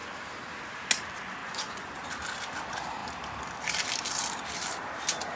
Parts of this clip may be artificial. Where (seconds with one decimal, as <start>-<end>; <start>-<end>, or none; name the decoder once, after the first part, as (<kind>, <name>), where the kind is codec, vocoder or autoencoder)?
1.4-2.0 (vocoder, Vocos)